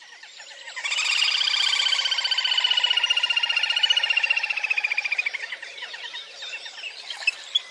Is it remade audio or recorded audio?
remade